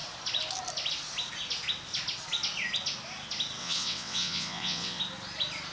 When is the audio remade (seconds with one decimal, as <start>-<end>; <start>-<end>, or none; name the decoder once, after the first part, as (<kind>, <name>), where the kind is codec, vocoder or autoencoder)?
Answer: 3.6-5.0 (vocoder, WaveNeXt)